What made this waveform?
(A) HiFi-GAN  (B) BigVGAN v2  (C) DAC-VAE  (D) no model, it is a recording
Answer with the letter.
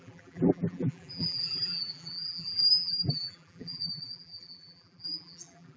B